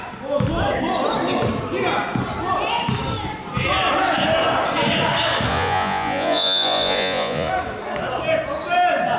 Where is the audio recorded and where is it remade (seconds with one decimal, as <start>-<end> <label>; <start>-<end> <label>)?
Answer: 0.0-5.5 recorded; 5.5-7.5 remade; 7.5-9.2 recorded

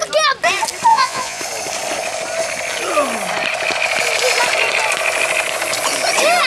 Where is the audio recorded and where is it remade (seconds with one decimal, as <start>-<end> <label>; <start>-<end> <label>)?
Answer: 0.0-0.9 recorded; 0.9-1.4 remade; 1.4-6.5 recorded